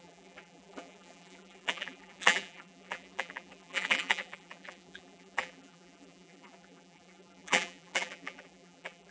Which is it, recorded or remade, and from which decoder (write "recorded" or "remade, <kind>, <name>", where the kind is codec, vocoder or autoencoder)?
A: remade, vocoder, BigVGAN v2